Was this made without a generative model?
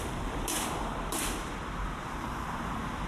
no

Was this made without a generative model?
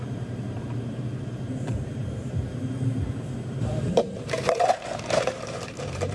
no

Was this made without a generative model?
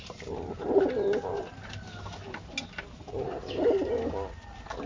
yes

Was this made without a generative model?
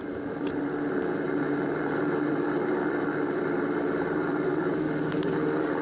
no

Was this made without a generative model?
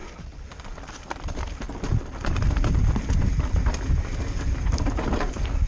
yes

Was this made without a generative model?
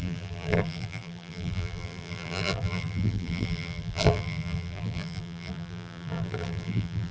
no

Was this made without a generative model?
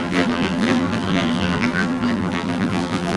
no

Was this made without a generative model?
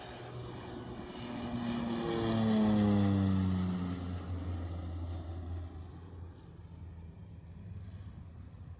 yes